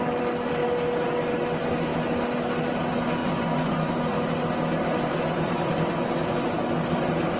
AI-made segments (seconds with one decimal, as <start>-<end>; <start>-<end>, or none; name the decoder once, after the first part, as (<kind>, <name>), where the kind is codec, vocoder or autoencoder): 3.2-3.9 (vocoder, Vocos)